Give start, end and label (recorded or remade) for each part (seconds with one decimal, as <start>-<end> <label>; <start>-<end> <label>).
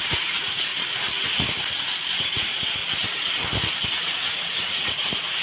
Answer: 0.0-0.7 remade; 0.7-2.2 recorded; 2.2-2.8 remade; 2.8-3.9 recorded; 3.9-5.4 remade